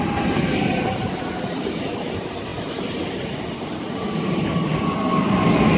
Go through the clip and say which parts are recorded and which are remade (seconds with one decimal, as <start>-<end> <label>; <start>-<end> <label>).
0.0-5.8 recorded